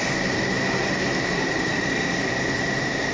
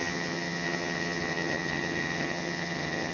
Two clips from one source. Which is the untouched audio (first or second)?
first